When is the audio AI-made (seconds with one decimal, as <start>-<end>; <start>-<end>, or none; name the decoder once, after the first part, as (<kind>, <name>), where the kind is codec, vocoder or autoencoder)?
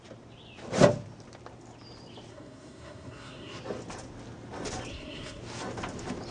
2.3-3.6 (codec, SNAC); 4.9-5.4